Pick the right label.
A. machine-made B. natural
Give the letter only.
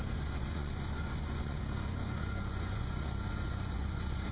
A